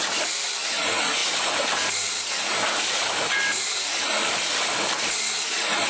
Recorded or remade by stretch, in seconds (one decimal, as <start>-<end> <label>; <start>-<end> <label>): 0.0-1.2 remade; 1.2-4.2 recorded; 4.2-5.9 remade